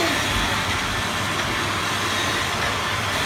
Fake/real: real